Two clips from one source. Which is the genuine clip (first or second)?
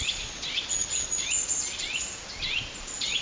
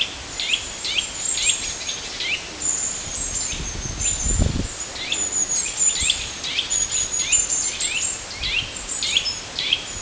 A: second